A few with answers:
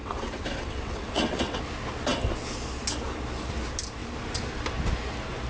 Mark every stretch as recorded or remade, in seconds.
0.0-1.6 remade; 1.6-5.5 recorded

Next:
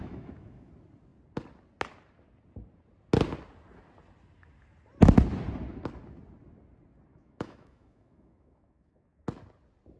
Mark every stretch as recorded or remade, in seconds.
0.0-0.7 remade; 0.7-7.1 recorded; 7.1-9.2 remade; 9.2-10.0 recorded

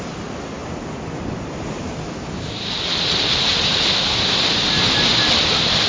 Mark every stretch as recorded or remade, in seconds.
0.0-5.9 recorded

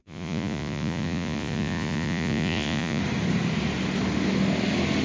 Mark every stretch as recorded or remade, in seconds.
0.0-3.0 remade; 3.0-5.0 recorded

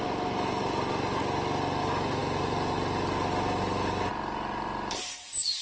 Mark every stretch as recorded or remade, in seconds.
0.0-1.2 remade; 1.2-1.8 recorded; 1.8-5.6 remade

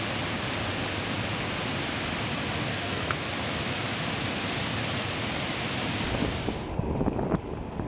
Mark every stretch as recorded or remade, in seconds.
0.0-2.7 recorded; 2.7-3.3 remade; 3.3-7.9 recorded

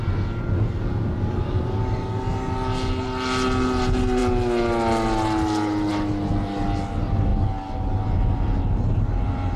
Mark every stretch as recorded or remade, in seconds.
0.0-9.6 recorded